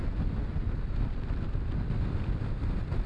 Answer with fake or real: real